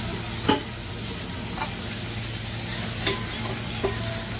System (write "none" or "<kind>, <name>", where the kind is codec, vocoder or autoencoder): none